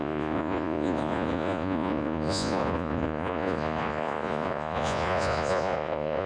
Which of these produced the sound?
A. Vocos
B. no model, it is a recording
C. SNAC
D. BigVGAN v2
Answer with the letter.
A